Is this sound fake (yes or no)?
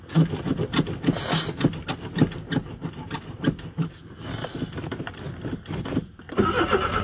no